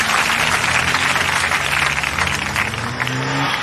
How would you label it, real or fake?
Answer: real